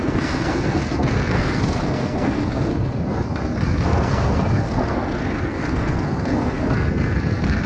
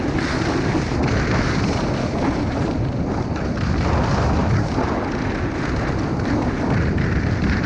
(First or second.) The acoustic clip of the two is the second